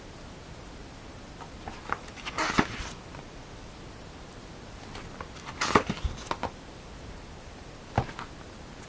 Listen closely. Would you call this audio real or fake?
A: real